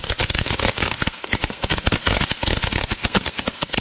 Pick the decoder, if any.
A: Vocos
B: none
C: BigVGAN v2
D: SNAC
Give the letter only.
D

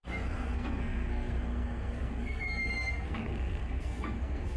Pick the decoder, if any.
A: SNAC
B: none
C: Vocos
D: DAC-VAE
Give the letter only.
A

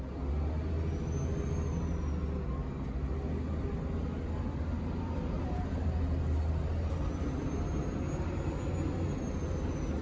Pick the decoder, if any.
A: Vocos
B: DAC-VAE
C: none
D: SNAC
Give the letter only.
C